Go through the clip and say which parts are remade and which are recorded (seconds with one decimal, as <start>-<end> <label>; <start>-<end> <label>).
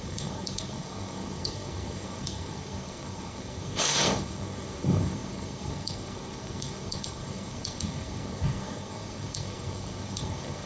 0.0-10.7 remade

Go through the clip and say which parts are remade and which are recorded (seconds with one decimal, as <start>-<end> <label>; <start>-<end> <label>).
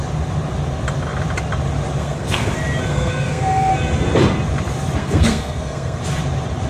0.0-2.0 recorded; 2.0-2.5 remade; 2.5-2.9 recorded; 2.9-3.7 remade; 3.7-5.0 recorded; 5.0-6.0 remade; 6.0-6.7 recorded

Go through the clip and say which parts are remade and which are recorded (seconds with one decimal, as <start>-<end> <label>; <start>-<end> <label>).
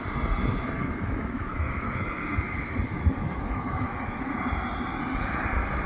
0.0-0.8 recorded; 0.8-4.3 remade; 4.3-5.9 recorded